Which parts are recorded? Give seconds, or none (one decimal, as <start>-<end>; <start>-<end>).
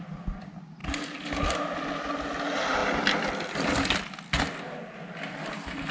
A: 0.0-5.9